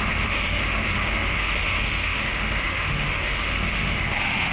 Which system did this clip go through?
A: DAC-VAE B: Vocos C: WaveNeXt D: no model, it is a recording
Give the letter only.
A